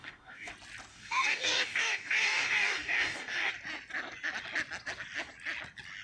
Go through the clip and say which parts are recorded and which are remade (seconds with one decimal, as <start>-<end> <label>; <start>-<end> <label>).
0.0-0.5 remade; 0.5-0.9 recorded; 0.9-3.5 remade; 3.5-6.0 recorded

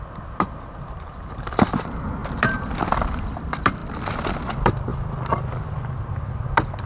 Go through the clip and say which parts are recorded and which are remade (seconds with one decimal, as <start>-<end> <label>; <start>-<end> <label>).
0.0-4.9 remade; 4.9-5.9 recorded; 5.9-6.9 remade